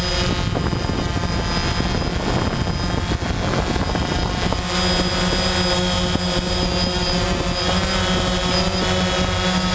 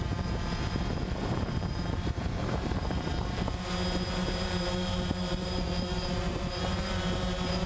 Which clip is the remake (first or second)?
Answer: second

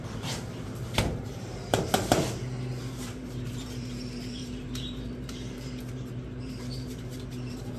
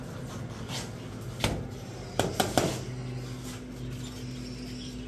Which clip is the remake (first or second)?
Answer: first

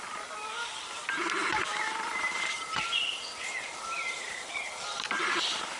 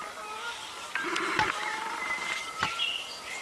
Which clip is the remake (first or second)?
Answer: first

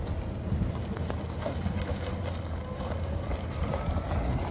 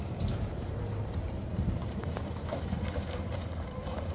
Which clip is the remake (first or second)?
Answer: second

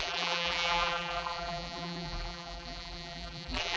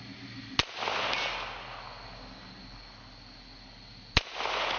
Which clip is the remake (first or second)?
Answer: first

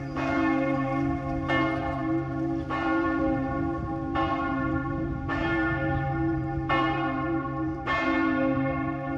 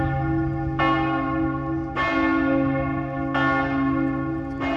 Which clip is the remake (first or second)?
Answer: first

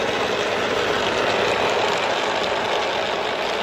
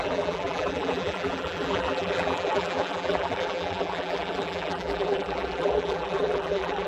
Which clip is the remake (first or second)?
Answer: second